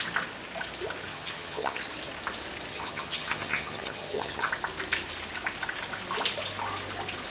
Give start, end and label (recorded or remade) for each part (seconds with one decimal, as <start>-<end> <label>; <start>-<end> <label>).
0.0-1.1 recorded; 1.1-1.8 remade; 1.8-2.7 recorded; 2.7-4.5 remade; 4.5-7.3 recorded